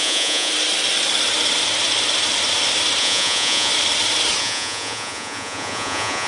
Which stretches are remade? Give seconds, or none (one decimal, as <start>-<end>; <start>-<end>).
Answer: 0.0-0.5; 3.0-3.7; 4.4-6.3